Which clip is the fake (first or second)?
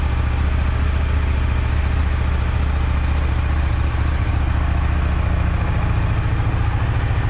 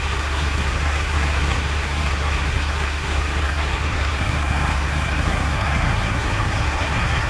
second